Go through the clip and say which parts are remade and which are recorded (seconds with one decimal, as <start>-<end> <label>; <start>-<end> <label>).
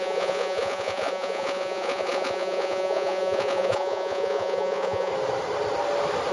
0.0-5.1 remade; 5.1-6.3 recorded